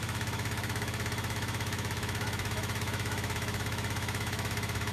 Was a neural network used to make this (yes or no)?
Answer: yes